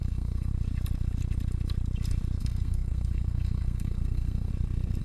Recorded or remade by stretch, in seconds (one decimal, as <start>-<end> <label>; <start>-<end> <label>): 0.0-0.5 remade; 0.5-2.4 recorded; 2.4-4.5 remade; 4.5-5.0 recorded